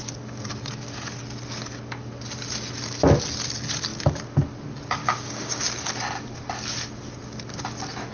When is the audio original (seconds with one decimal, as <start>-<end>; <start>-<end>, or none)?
0.0-5.0; 5.6-8.1